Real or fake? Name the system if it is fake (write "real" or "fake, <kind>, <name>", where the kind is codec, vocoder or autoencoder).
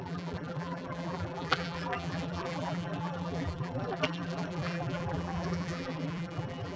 fake, vocoder, BigVGAN v2